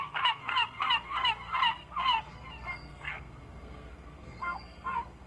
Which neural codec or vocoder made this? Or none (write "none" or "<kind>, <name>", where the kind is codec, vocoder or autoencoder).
codec, SNAC